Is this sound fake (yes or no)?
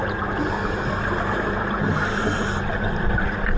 no